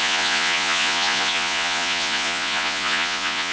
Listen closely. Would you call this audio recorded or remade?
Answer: remade